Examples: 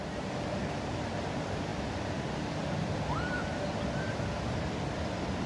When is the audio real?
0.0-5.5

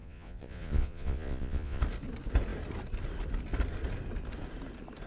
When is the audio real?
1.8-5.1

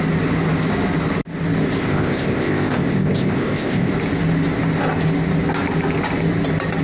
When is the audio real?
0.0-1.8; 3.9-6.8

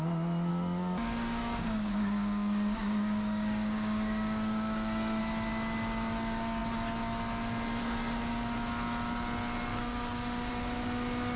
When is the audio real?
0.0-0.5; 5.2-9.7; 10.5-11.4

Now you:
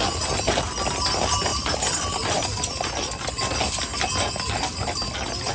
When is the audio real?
0.0-5.5

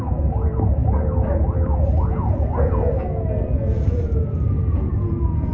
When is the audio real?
none

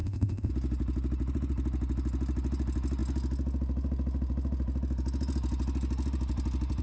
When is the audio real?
0.5-6.8